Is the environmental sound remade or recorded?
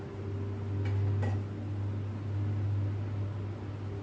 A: recorded